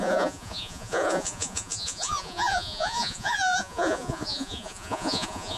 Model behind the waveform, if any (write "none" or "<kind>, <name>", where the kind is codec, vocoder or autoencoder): vocoder, Vocos